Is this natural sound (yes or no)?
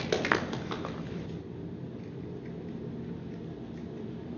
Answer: yes